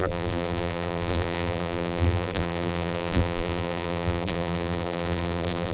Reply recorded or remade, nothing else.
remade